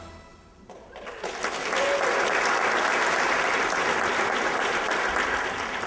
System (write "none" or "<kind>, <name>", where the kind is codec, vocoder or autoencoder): none